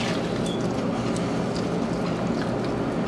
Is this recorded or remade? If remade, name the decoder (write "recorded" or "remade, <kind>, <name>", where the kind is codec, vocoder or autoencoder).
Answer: recorded